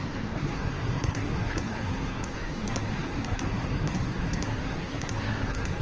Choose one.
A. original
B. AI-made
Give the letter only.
B